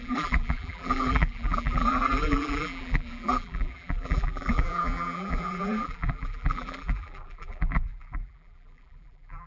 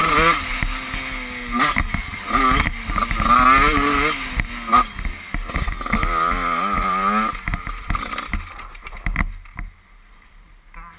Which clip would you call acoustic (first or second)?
second